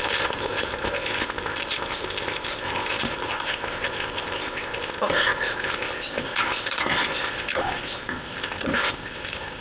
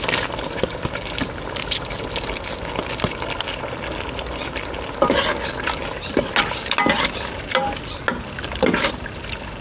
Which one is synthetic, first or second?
first